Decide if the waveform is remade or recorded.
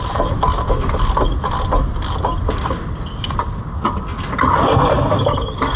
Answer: recorded